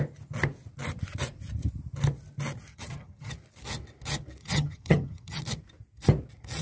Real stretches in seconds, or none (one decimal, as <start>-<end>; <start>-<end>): 0.0-2.7; 3.3-4.4; 5.4-6.6